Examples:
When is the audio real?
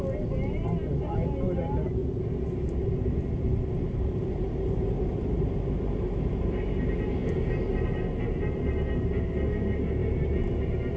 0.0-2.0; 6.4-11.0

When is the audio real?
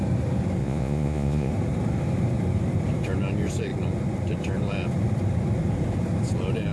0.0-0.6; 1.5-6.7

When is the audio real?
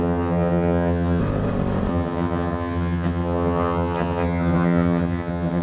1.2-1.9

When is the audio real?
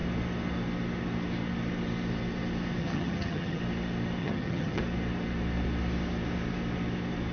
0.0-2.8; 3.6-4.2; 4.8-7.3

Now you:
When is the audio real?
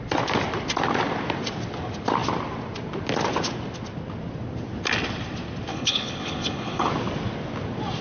0.0-5.7; 6.9-8.0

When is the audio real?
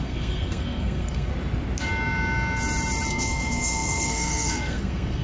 1.3-3.1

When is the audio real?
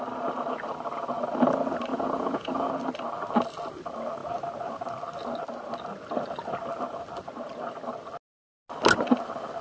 0.0-1.9; 2.7-9.6